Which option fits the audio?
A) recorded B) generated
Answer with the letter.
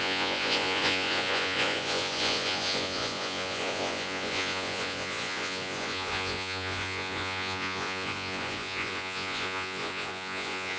B